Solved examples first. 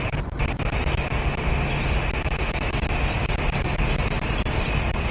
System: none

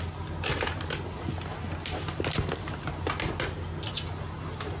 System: none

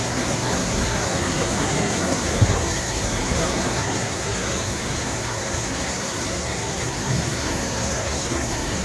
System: codec, SNAC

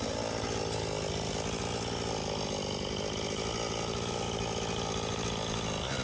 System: none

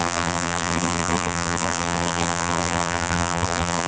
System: vocoder, BigVGAN v2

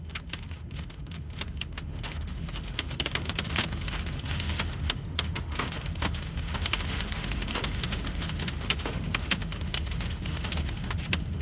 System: autoencoder, DAC-VAE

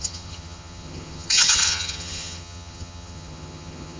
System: vocoder, HiFi-GAN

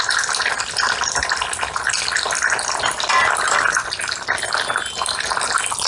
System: none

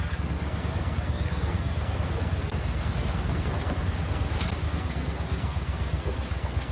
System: codec, SNAC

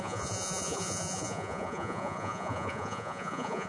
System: vocoder, Vocos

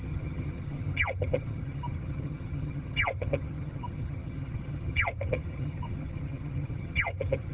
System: vocoder, HiFi-GAN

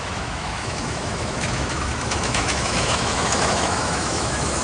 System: autoencoder, DAC-VAE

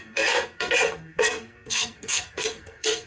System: codec, SNAC